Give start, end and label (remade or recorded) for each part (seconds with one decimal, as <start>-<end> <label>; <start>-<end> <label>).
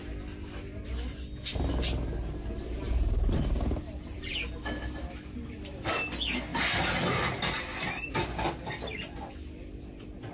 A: 0.0-10.3 recorded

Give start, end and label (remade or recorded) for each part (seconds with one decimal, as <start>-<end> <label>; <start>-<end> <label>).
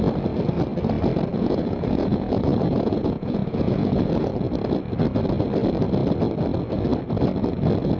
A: 0.0-1.3 recorded; 1.3-4.3 remade; 4.3-8.0 recorded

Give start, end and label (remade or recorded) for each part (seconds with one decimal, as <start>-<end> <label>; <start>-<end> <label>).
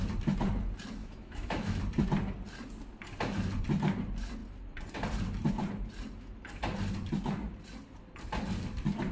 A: 0.0-1.0 recorded; 1.0-1.8 remade; 1.8-9.1 recorded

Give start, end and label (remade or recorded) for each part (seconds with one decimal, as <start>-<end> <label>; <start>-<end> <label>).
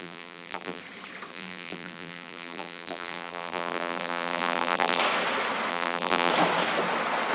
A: 0.0-0.8 remade; 0.8-1.3 recorded; 1.3-5.0 remade; 5.0-5.7 recorded; 5.7-6.3 remade; 6.3-7.3 recorded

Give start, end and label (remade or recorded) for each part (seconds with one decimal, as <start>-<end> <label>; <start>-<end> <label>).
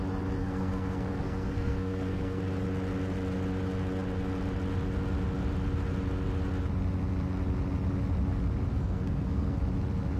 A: 0.0-0.4 recorded; 0.4-2.4 remade; 2.4-8.7 recorded; 8.7-9.6 remade; 9.6-10.2 recorded